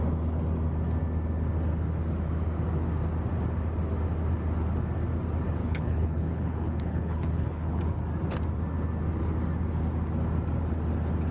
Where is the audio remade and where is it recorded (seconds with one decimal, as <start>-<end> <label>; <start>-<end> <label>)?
0.0-5.6 recorded; 5.6-7.8 remade; 7.8-11.3 recorded